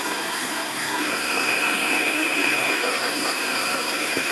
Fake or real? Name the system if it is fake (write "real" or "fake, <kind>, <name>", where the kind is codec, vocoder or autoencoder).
fake, codec, SNAC